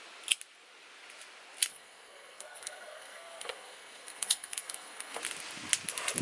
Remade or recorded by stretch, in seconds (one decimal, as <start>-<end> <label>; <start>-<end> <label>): 0.0-1.7 recorded; 1.7-5.2 remade; 5.2-6.2 recorded